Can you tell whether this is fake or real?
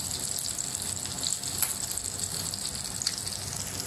real